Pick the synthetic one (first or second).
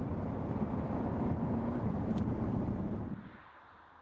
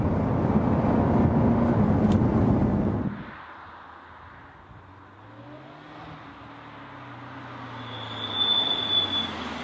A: first